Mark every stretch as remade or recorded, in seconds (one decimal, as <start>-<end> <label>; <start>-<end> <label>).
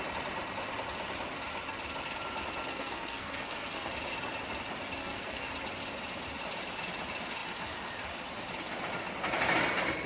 0.0-2.7 recorded; 2.7-3.9 remade; 3.9-5.0 recorded; 5.0-5.5 remade; 5.5-10.1 recorded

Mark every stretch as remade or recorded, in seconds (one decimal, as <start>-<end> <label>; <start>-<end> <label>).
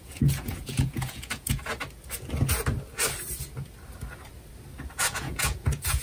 0.0-1.7 remade; 1.7-5.0 recorded; 5.0-6.0 remade